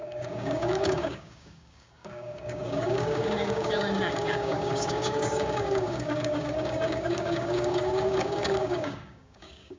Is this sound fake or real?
fake